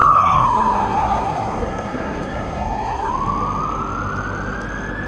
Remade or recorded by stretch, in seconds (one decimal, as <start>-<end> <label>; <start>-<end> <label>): 0.0-3.1 remade; 3.1-5.1 recorded